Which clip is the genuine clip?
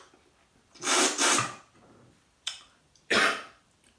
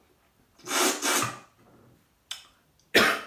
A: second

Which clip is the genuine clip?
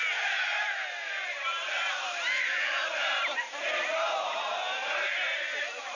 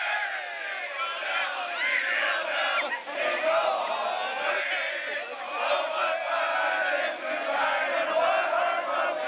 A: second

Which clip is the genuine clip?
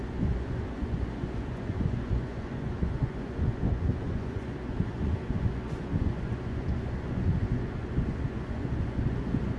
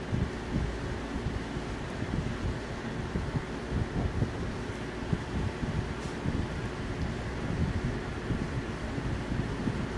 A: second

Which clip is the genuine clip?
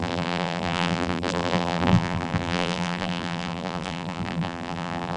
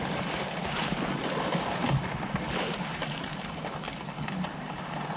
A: second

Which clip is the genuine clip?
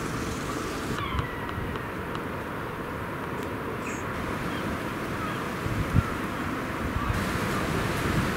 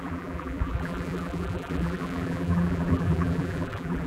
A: first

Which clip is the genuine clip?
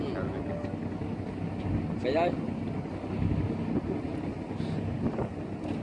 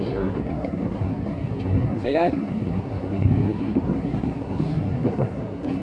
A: first